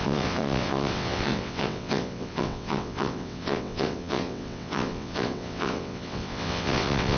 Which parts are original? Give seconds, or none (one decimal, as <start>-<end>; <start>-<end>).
none